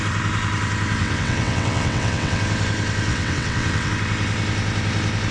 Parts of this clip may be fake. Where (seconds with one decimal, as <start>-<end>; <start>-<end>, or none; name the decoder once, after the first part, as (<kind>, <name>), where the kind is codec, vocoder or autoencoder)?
1.0-2.4 (vocoder, WaveNeXt); 3.1-3.9